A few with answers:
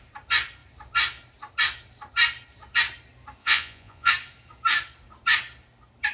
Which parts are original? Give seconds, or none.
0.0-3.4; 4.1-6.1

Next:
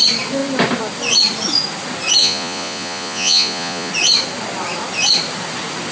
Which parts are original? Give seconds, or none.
0.0-2.2; 3.9-5.9

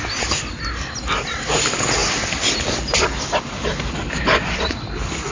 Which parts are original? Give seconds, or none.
0.0-5.3